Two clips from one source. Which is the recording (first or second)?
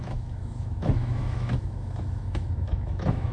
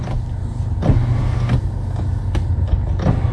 second